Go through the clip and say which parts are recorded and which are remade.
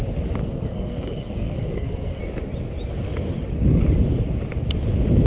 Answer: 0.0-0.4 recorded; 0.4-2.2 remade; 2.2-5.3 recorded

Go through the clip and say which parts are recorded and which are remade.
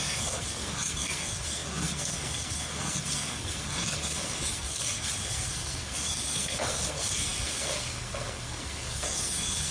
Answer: 0.0-9.7 remade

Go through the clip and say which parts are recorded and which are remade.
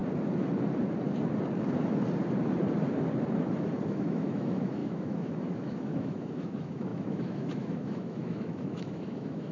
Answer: 0.0-3.9 recorded; 3.9-9.5 remade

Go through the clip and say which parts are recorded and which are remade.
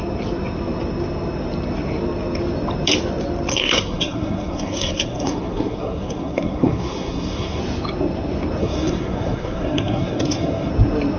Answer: 0.0-3.5 recorded; 3.5-7.6 remade; 7.6-8.6 recorded; 8.6-10.7 remade; 10.7-11.2 recorded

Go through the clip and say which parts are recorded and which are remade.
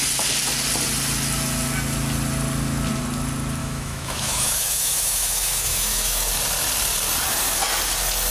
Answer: 0.0-3.6 recorded; 3.6-6.3 remade; 6.3-8.3 recorded